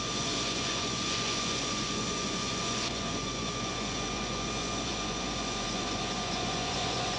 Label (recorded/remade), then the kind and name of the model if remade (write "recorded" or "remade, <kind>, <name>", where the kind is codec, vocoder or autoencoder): remade, vocoder, Vocos